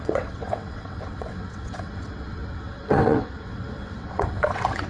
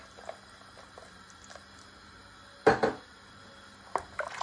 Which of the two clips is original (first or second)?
second